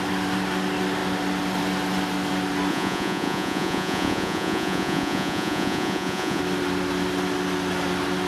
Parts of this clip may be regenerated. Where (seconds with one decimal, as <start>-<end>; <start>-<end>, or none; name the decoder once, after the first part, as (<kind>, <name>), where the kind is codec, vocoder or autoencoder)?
2.7-6.4 (vocoder, Vocos)

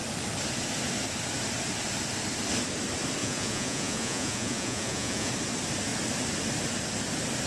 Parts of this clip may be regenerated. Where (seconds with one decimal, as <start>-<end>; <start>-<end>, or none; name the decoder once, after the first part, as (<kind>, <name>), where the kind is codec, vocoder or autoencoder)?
3.2-5.3 (vocoder, Vocos)

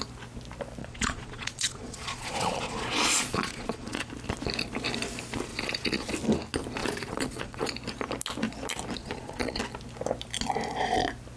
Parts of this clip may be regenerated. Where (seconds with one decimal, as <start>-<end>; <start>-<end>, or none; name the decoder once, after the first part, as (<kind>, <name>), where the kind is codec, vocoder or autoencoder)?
0.8-4.1 (vocoder, Vocos); 5.5-6.1; 6.8-7.7; 9.0-9.6

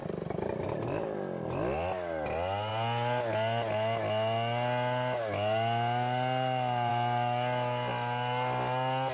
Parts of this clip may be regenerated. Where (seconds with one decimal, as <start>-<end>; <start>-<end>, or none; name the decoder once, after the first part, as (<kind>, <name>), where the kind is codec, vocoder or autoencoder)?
none

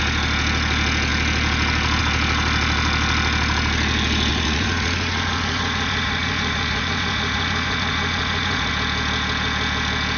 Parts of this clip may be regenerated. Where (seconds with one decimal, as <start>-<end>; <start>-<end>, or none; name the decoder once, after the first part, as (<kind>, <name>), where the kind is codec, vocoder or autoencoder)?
4.3-8.7 (vocoder, Vocos)